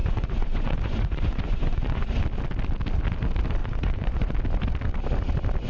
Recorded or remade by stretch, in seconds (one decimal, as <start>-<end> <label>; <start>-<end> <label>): 0.0-2.1 remade; 2.1-3.6 recorded; 3.6-4.4 remade; 4.4-5.7 recorded